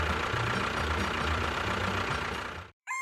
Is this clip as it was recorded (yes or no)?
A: no